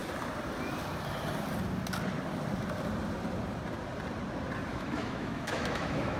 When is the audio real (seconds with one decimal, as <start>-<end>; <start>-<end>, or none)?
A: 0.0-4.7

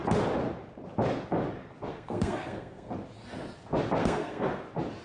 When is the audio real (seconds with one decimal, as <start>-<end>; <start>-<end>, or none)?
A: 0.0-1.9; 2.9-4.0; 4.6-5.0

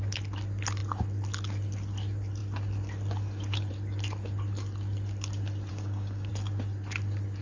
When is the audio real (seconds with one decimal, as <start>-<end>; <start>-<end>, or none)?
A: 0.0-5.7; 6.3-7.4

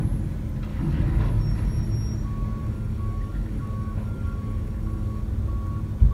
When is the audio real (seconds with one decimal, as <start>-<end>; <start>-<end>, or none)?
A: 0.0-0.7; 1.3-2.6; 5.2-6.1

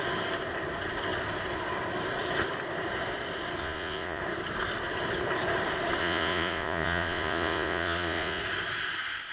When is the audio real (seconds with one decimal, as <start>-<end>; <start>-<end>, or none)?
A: 0.0-3.6; 4.2-6.0; 8.4-9.3

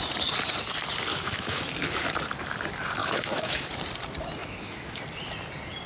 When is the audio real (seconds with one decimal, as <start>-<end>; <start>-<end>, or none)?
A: 0.0-1.1; 1.6-3.0; 3.7-4.4; 5.0-5.9

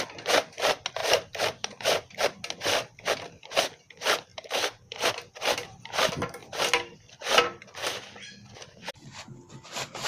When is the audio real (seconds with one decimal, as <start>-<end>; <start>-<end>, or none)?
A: 0.0-1.0; 1.8-4.3; 5.1-10.1